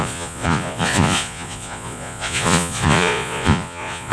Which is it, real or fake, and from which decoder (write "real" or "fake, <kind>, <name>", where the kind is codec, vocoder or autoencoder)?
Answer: fake, vocoder, Vocos